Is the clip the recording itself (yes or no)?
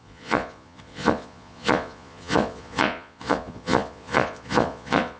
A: no